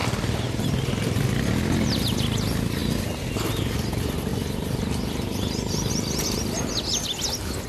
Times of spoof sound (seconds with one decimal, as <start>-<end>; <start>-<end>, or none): 4.3-5.9